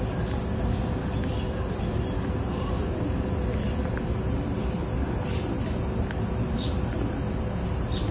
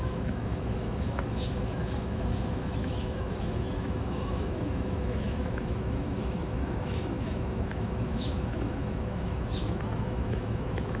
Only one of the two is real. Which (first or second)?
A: first